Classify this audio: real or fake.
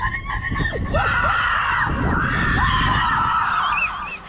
real